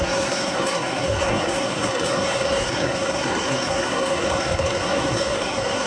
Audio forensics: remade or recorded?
remade